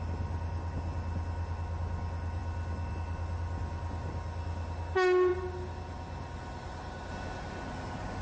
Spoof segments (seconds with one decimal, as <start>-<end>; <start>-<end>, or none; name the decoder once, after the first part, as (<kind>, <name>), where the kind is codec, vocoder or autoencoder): none